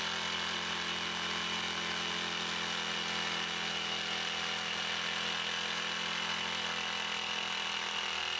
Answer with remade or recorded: recorded